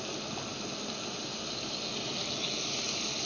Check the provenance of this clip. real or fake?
real